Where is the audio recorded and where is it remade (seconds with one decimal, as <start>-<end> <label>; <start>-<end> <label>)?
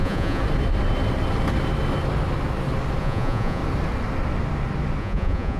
0.0-0.4 remade; 0.4-3.0 recorded; 3.0-3.6 remade; 3.6-5.0 recorded; 5.0-5.6 remade